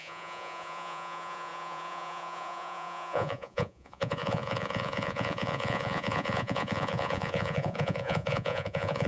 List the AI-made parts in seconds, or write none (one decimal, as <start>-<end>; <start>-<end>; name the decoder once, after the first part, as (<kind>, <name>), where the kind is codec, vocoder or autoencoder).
0.0-9.1 (vocoder, Vocos)